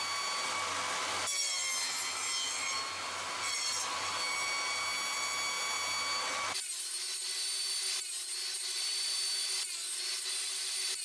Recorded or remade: recorded